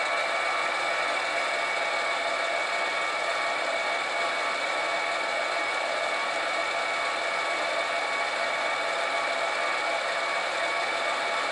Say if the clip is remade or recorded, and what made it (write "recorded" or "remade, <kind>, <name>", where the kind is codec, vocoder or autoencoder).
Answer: recorded